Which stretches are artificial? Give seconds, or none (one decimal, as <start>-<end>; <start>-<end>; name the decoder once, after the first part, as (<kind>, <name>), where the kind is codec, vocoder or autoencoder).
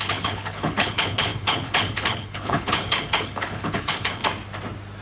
0.0-4.2 (codec, HILCodec)